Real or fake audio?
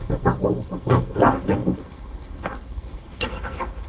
fake